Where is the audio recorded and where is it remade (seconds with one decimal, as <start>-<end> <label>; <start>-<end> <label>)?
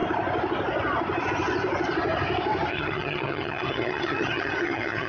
0.0-2.7 recorded; 2.7-5.1 remade